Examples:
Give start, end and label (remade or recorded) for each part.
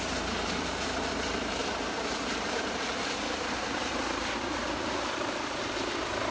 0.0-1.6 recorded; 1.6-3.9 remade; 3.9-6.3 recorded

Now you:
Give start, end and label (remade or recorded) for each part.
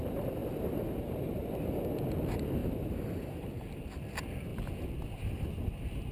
0.0-0.4 recorded; 0.4-1.1 remade; 1.1-2.6 recorded; 2.6-3.8 remade; 3.8-4.5 recorded; 4.5-5.2 remade; 5.2-6.1 recorded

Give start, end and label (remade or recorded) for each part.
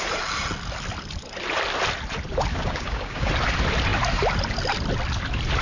0.0-2.5 recorded; 2.5-3.3 remade; 3.3-5.6 recorded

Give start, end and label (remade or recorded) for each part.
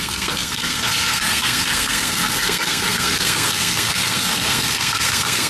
0.0-5.5 remade